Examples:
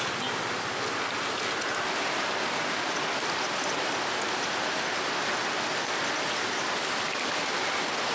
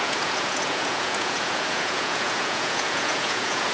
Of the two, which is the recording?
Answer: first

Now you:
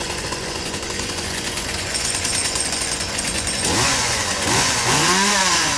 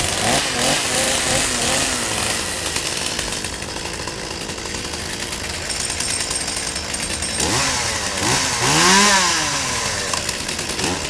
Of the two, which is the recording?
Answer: second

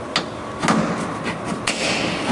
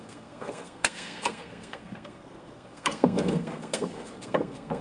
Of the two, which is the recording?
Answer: first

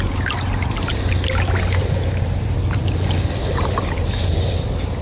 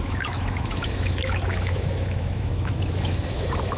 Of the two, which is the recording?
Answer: first